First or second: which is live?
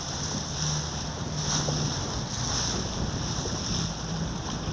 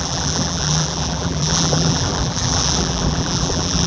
first